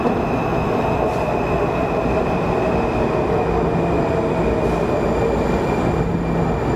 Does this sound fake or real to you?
real